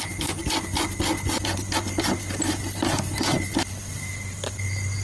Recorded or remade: recorded